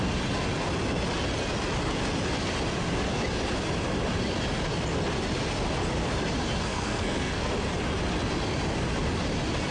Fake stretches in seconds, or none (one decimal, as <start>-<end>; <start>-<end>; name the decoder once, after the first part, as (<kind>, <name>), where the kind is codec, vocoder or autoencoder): 6.7-7.5 (codec, SNAC)